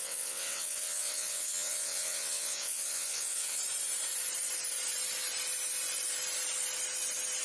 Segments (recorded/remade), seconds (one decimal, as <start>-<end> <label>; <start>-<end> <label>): 0.0-3.6 remade; 3.6-7.4 recorded